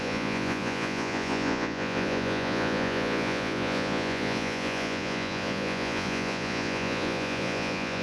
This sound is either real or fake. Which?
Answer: fake